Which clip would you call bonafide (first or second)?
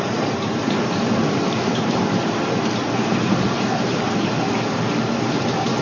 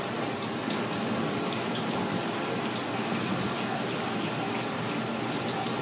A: second